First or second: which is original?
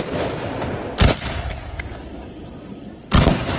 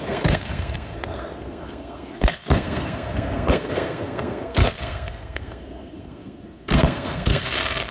first